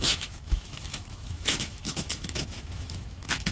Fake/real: fake